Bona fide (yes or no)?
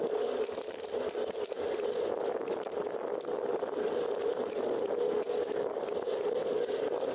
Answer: yes